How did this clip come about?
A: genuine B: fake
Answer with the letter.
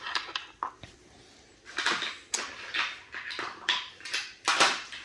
A